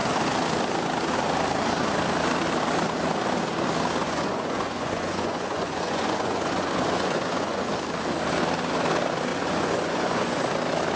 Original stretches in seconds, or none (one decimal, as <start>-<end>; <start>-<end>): 0.0-4.0; 7.6-9.3; 10.4-11.0